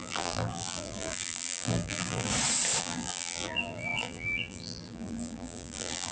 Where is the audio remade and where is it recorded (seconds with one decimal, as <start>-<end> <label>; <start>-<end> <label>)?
0.0-2.3 remade; 2.3-2.8 recorded; 2.8-6.1 remade